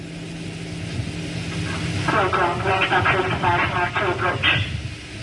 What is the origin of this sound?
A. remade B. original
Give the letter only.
B